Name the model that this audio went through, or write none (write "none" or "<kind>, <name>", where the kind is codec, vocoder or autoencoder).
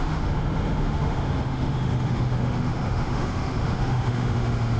autoencoder, DAC-VAE